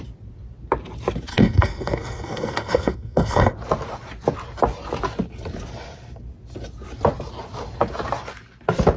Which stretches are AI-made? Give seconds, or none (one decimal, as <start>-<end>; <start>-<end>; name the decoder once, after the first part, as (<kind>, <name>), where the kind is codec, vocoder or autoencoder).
1.3-3.5 (codec, SNAC)